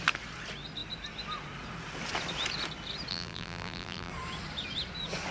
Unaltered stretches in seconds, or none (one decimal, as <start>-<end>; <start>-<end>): 0.0-3.1; 4.1-5.3